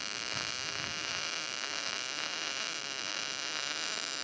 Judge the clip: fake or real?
real